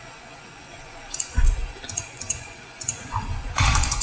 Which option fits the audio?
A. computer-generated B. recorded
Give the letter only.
A